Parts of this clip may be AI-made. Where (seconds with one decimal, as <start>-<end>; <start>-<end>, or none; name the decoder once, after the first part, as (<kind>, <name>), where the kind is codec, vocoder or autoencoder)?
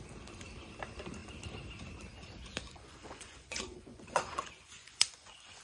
2.6-5.6 (vocoder, Vocos)